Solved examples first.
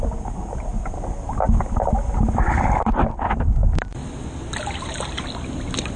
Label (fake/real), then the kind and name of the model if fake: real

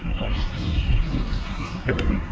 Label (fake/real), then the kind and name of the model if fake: fake, codec, SNAC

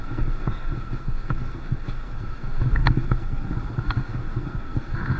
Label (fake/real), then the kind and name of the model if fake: fake, codec, SNAC